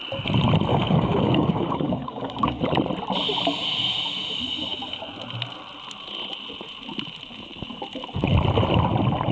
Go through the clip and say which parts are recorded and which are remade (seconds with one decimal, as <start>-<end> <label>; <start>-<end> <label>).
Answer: 0.0-0.7 recorded; 0.7-2.6 remade; 2.6-9.3 recorded